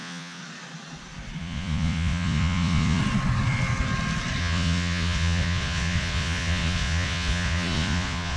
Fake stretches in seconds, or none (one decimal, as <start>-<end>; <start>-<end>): 0.0-0.4; 1.4-3.0; 4.4-8.4